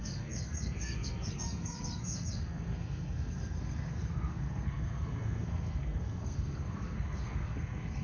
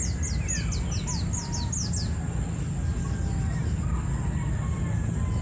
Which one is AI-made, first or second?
first